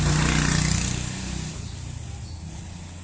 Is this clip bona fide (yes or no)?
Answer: yes